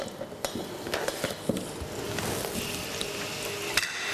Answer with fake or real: real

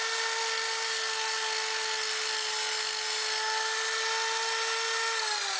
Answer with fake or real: real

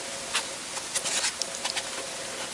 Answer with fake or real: real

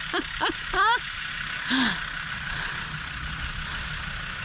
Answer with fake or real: real